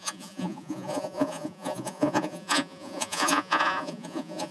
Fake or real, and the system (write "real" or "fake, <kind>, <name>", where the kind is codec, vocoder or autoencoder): fake, vocoder, Vocos